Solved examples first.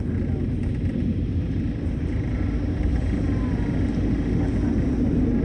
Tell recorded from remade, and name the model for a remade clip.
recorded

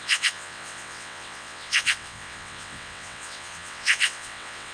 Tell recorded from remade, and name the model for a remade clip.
remade, vocoder, WaveNeXt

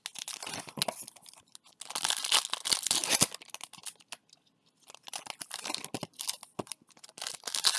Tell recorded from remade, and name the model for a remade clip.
recorded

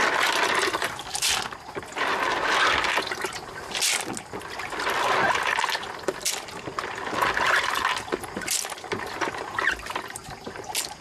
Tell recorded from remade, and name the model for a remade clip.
recorded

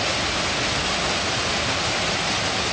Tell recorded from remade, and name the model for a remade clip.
recorded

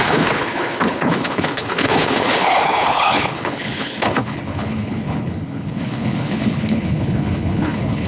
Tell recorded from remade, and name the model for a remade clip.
remade, codec, HILCodec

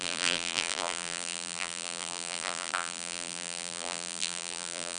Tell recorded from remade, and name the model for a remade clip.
remade, vocoder, BigVGAN v2